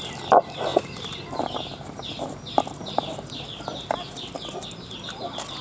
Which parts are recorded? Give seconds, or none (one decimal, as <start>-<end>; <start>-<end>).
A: 0.0-5.6